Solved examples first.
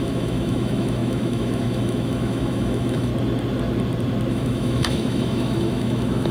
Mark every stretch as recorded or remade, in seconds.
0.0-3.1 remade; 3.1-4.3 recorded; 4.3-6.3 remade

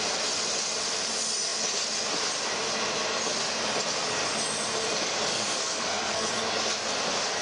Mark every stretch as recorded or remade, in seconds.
0.0-5.3 recorded; 5.3-6.3 remade; 6.3-7.4 recorded

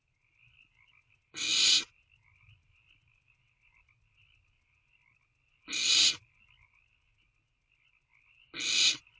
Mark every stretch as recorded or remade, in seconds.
0.0-9.2 recorded

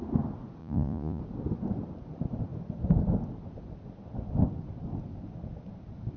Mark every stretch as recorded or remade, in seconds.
0.0-0.6 recorded; 0.6-1.2 remade; 1.2-6.2 recorded

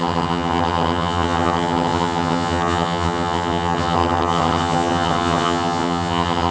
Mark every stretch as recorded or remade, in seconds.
0.0-6.5 remade

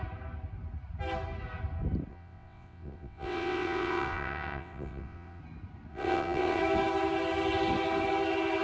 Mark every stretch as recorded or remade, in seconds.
0.0-2.1 recorded; 2.1-5.4 remade; 5.4-5.9 recorded; 5.9-6.6 remade; 6.6-8.6 recorded

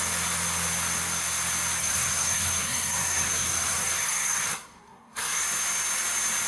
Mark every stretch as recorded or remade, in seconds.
0.0-1.8 recorded; 1.8-5.4 remade; 5.4-6.5 recorded

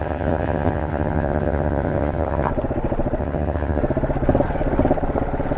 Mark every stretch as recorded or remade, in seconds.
0.0-2.5 remade; 2.5-3.2 recorded; 3.2-3.8 remade; 3.8-5.6 recorded